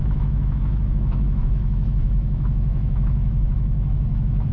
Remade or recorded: remade